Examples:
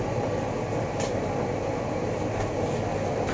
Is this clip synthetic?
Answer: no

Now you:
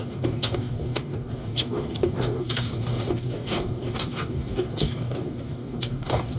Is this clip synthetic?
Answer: yes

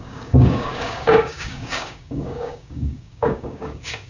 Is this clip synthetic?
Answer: yes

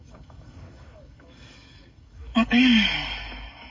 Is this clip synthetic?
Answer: yes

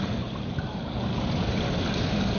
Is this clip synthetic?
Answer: no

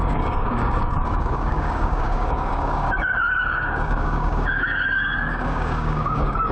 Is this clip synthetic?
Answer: yes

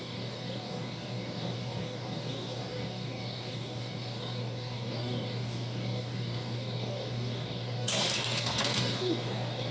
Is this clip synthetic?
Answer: yes